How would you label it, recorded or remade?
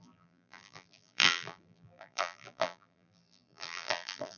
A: remade